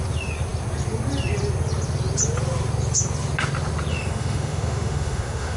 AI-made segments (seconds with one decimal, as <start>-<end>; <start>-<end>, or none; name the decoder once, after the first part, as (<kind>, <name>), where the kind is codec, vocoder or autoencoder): 3.9-5.6 (autoencoder, DAC-VAE)